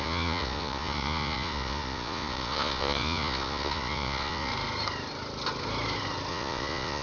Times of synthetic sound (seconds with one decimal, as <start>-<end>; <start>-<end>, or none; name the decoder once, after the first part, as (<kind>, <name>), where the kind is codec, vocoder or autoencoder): 0.0-4.5 (vocoder, Vocos); 6.3-7.0